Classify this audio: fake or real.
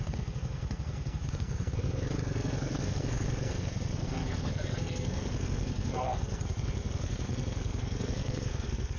fake